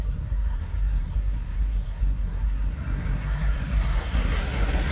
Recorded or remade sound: remade